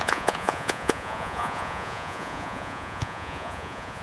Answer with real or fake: fake